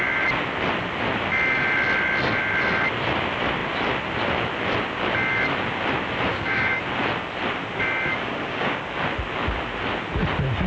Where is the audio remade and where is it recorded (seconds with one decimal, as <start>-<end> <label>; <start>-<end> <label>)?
0.0-6.3 recorded; 6.3-6.8 remade; 6.8-8.1 recorded; 8.1-8.8 remade; 8.8-10.7 recorded